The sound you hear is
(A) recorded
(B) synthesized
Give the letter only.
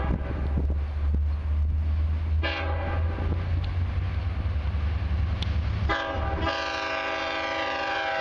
A